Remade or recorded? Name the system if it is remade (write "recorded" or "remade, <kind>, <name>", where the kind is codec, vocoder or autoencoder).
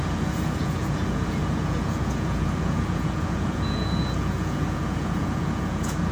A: remade, vocoder, Vocos